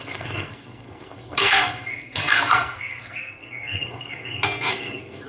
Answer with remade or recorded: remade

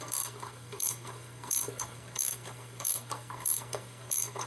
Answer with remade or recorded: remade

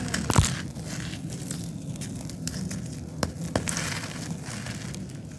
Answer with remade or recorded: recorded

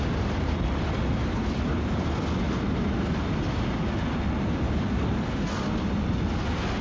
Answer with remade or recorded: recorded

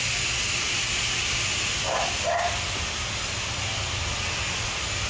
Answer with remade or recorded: recorded